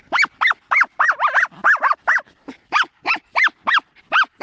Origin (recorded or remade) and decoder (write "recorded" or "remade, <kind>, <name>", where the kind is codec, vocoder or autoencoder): recorded